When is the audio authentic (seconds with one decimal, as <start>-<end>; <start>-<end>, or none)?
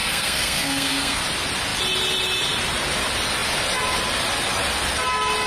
1.2-5.5